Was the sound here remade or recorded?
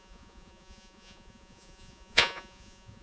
remade